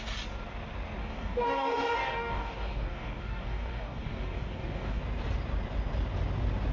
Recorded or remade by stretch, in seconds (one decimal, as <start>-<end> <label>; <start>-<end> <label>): 0.0-1.0 recorded; 1.0-5.0 remade; 5.0-6.7 recorded